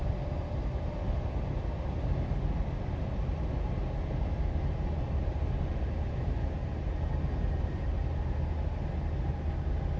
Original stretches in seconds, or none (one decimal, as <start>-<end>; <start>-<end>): 0.0-10.0